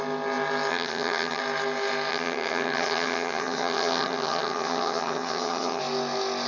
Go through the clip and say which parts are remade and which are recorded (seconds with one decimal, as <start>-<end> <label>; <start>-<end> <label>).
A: 0.0-0.7 recorded; 0.7-1.4 remade; 1.4-2.1 recorded; 2.1-5.8 remade; 5.8-6.5 recorded